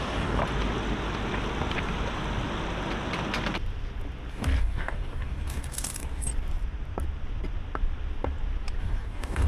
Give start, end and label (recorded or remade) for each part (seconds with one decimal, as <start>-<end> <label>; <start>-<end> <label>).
0.0-0.4 remade; 0.4-4.3 recorded; 4.3-6.3 remade; 6.3-8.8 recorded; 8.8-9.5 remade